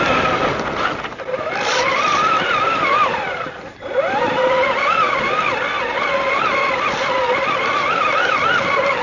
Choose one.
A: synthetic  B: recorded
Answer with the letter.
B